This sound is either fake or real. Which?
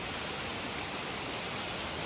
real